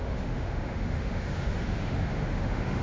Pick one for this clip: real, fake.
fake